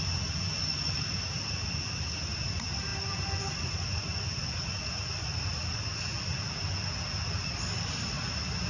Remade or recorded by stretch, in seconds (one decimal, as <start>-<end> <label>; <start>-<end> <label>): 0.0-8.7 recorded